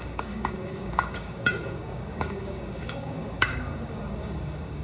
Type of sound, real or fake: fake